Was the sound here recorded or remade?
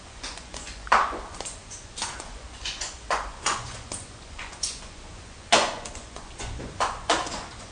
remade